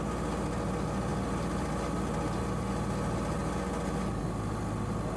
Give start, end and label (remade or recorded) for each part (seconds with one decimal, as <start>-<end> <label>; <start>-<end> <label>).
0.0-5.2 recorded